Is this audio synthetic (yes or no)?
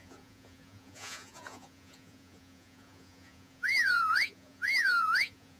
yes